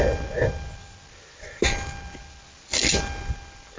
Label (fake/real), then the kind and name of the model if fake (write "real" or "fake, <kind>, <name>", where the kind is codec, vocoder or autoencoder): real